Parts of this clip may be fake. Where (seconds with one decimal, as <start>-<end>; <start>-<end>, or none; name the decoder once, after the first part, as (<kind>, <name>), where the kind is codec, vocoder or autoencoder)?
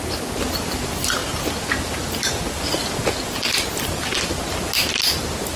none